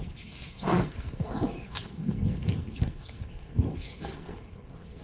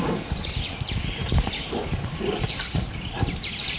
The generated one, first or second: first